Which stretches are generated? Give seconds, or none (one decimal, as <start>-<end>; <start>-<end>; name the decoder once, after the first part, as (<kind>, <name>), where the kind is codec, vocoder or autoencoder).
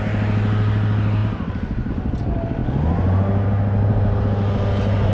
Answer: 1.2-1.9 (vocoder, BigVGAN v2)